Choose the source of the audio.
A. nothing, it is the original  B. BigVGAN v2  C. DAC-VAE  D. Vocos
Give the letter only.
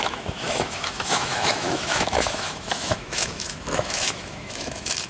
C